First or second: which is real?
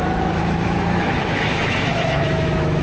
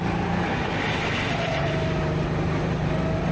second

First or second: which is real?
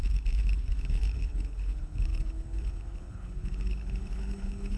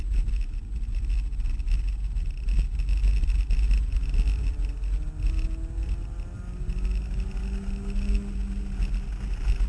second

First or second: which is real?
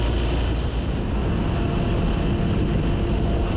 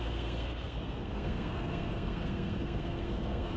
first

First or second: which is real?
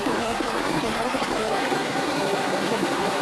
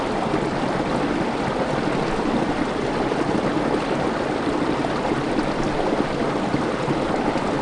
second